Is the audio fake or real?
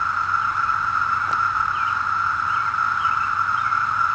real